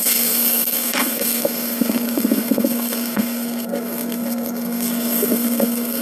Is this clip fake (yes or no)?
yes